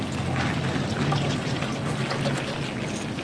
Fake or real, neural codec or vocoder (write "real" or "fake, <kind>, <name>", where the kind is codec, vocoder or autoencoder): real